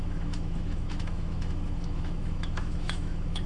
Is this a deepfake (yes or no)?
yes